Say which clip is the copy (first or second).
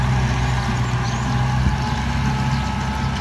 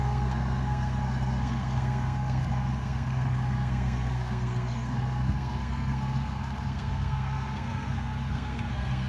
second